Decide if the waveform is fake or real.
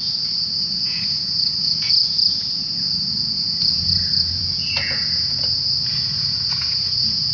fake